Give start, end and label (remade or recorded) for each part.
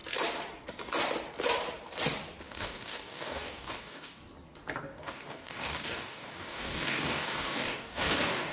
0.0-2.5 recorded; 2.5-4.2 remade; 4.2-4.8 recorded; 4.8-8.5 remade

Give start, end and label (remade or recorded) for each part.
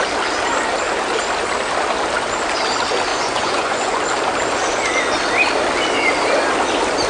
0.0-3.1 recorded; 3.1-4.0 remade; 4.0-7.1 recorded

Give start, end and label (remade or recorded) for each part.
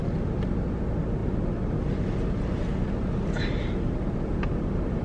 0.0-5.0 recorded